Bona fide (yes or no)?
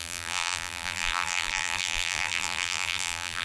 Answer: no